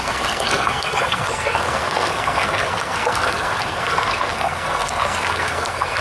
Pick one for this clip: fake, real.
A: fake